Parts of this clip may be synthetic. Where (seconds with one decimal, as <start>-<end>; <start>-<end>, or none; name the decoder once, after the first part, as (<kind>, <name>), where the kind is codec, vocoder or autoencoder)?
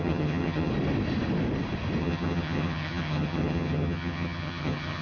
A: 0.0-0.7 (vocoder, HiFi-GAN); 2.0-5.0